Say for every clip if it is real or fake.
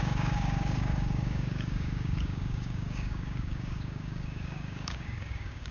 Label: fake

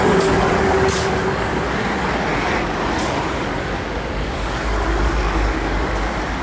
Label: fake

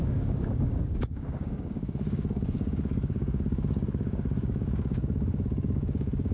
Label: fake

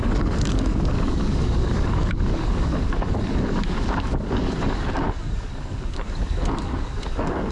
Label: fake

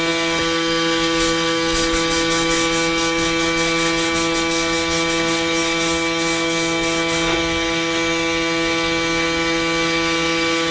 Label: fake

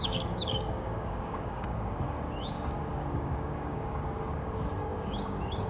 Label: fake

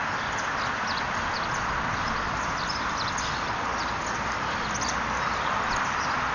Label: real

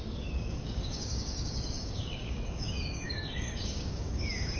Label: fake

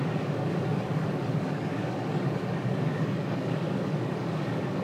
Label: fake